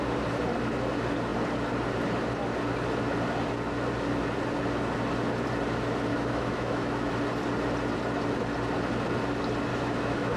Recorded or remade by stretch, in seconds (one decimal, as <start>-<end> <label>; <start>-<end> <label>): 0.0-6.1 recorded; 6.1-7.1 remade; 7.1-9.7 recorded; 9.7-10.4 remade